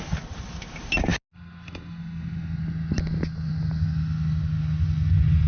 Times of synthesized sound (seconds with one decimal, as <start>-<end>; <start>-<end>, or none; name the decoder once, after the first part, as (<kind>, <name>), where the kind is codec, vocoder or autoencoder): none

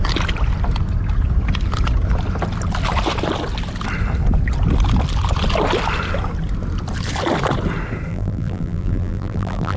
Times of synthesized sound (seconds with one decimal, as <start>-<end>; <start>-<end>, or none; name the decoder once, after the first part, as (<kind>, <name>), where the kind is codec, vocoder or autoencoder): 8.1-9.8 (vocoder, BigVGAN v2)